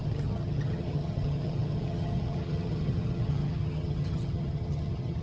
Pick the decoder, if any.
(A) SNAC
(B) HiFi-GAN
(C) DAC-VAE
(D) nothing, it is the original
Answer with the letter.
B